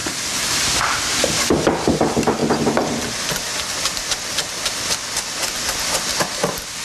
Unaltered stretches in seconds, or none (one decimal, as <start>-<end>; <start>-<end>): 2.4-6.8